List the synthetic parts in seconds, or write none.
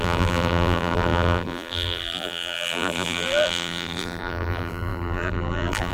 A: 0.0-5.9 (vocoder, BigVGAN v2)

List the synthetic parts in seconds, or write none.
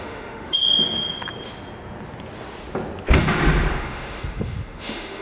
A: 0.0-0.6 (autoencoder, DAC-VAE); 3.7-5.2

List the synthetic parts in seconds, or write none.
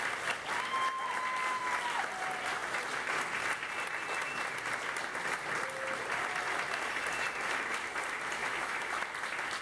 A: 8.4-8.9 (autoencoder, DAC-VAE)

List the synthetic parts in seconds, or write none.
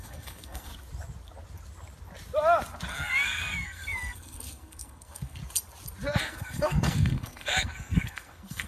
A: 0.0-0.7 (codec, SNAC); 2.9-5.4; 6.2-8.7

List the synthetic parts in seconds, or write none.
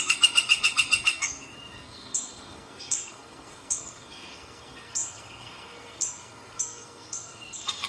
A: 0.0-7.9 (codec, SNAC)